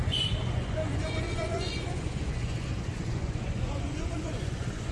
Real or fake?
fake